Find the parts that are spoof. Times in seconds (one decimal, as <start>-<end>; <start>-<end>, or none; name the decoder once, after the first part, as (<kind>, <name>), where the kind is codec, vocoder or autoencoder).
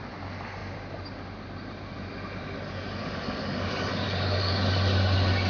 3.0-4.5 (codec, DAC)